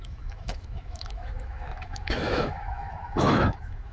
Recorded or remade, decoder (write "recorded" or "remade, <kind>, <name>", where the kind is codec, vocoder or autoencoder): remade, autoencoder, DAC-VAE